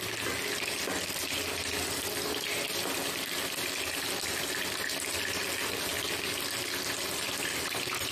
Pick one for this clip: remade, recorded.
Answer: recorded